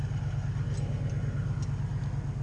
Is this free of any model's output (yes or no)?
yes